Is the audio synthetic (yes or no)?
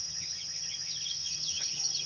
yes